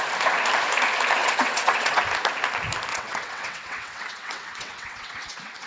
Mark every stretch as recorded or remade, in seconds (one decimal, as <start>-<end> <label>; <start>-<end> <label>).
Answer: 0.0-1.2 recorded; 1.2-2.0 remade; 2.0-2.9 recorded; 2.9-5.7 remade